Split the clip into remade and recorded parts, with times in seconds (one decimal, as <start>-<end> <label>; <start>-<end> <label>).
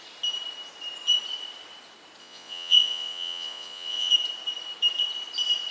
0.0-2.2 recorded; 2.2-4.1 remade; 4.1-5.7 recorded